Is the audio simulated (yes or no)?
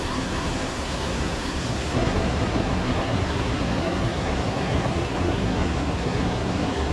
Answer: yes